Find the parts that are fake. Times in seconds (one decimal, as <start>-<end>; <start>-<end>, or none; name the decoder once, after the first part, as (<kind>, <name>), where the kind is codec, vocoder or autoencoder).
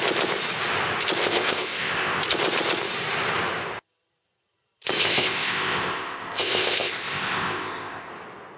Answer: 1.2-2.2 (codec, ZipCodec); 5.0-8.1